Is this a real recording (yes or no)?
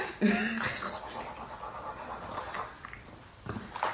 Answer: yes